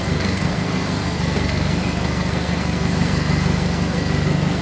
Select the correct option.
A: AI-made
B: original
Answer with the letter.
A